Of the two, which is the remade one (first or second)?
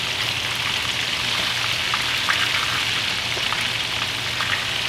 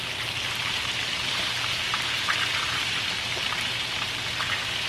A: second